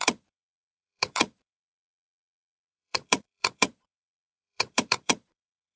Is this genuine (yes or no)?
no